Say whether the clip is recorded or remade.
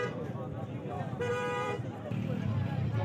remade